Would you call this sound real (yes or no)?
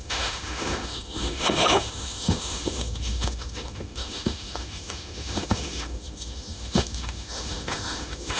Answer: no